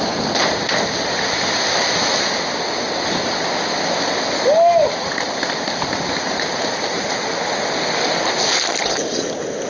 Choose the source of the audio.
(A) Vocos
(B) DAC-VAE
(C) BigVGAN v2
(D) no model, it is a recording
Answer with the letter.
D